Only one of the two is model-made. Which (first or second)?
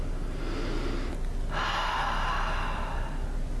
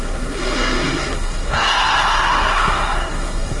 second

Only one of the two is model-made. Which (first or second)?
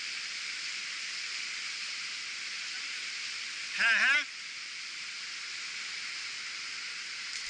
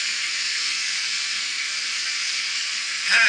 second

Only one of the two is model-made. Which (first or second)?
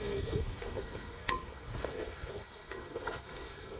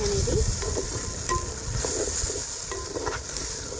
first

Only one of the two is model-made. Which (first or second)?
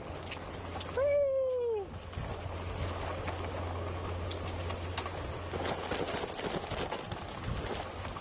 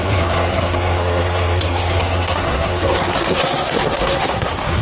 second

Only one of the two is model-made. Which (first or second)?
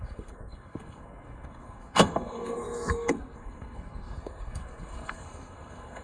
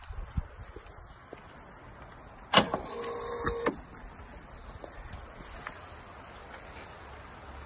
first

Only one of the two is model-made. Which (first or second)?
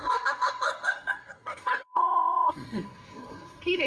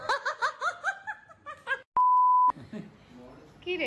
first